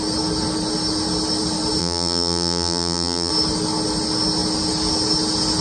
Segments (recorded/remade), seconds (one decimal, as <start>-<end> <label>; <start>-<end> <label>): 0.0-1.8 recorded; 1.8-3.3 remade; 3.3-5.6 recorded